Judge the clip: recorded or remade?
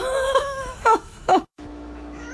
remade